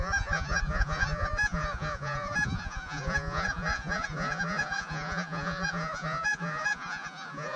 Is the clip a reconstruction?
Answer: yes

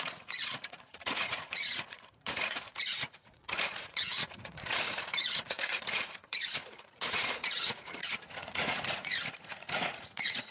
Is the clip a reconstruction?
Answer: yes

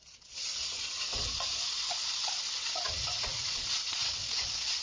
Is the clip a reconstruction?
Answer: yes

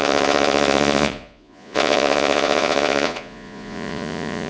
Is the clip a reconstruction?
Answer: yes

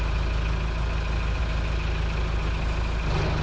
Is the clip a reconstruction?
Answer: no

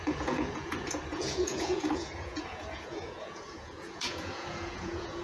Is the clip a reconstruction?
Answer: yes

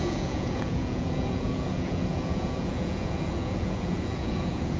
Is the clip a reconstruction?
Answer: yes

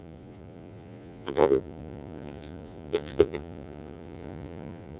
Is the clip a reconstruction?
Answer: yes